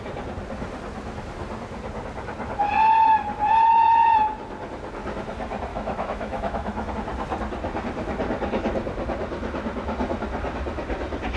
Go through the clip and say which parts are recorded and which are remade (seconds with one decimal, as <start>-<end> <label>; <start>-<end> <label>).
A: 0.0-5.7 recorded; 5.7-6.9 remade; 6.9-11.4 recorded

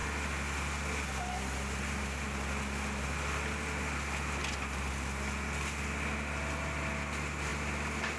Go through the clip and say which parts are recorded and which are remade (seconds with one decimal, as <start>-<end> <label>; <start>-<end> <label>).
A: 0.0-8.2 recorded

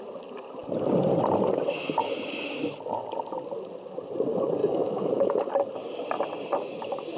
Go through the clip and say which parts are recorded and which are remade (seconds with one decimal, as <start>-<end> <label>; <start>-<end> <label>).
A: 0.0-4.6 recorded; 4.6-5.5 remade; 5.5-7.2 recorded